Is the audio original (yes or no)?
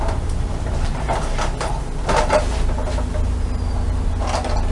yes